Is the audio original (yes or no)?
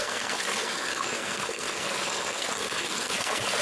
no